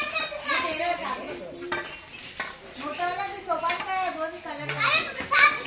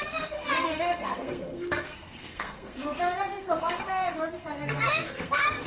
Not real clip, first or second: second